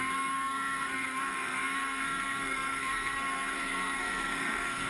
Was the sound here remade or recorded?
remade